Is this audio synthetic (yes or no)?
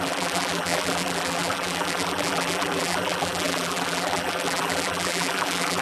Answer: yes